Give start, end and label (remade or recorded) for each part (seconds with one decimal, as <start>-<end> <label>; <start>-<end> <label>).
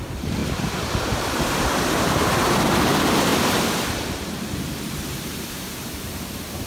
0.0-3.3 remade; 3.3-3.9 recorded; 3.9-6.7 remade